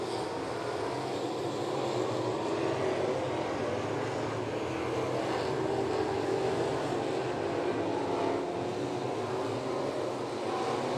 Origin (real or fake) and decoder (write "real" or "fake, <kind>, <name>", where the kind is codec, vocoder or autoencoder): real